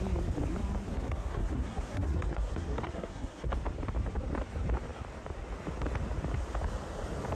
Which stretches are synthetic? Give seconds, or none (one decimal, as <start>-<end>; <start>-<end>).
0.9-3.5